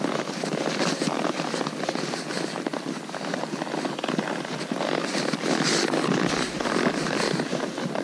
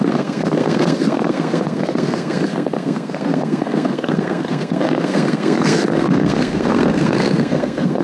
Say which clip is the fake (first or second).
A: second